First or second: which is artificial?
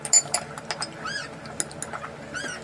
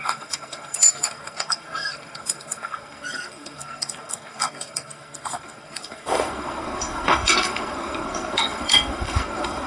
second